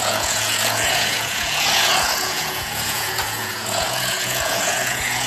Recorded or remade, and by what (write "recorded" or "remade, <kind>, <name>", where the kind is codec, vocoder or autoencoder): remade, vocoder, Vocos